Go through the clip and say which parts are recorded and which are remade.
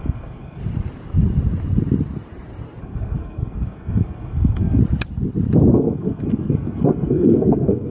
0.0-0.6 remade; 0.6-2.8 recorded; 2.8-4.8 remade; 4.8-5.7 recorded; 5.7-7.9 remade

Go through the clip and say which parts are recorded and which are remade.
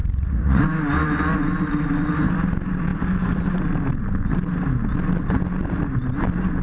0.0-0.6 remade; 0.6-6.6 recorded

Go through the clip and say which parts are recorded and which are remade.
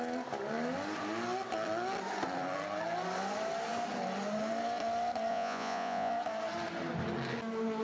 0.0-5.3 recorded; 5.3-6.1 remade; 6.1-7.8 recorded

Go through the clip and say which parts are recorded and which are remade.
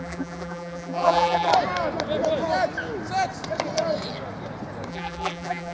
0.0-1.5 remade; 1.5-4.9 recorded; 4.9-5.7 remade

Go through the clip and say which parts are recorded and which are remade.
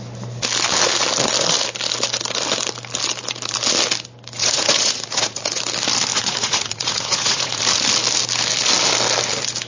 0.0-4.4 recorded; 4.4-5.6 remade; 5.6-6.1 recorded; 6.1-7.6 remade; 7.6-9.7 recorded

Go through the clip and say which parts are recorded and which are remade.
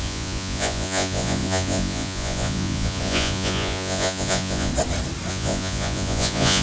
0.0-4.7 remade; 4.7-5.3 recorded; 5.3-6.6 remade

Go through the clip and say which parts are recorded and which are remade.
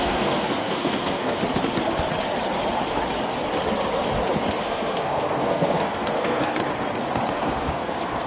0.0-1.4 remade; 1.4-4.6 recorded; 4.6-6.6 remade; 6.6-7.3 recorded; 7.3-8.3 remade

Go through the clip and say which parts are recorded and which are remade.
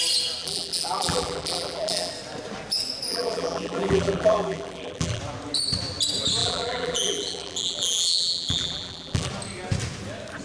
0.0-0.4 recorded; 0.4-2.1 remade; 2.1-3.1 recorded; 3.1-5.2 remade; 5.2-6.4 recorded; 6.4-9.3 remade; 9.3-10.4 recorded